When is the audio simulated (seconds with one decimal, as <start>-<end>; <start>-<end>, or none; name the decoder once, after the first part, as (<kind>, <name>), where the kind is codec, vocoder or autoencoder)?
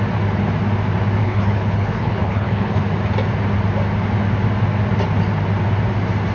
1.2-2.8 (codec, HILCodec)